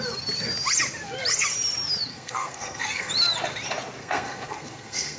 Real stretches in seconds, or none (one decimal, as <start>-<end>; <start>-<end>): 0.0-2.1; 3.1-4.0